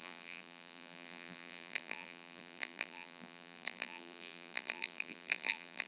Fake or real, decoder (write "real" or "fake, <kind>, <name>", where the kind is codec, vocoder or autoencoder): fake, vocoder, BigVGAN v2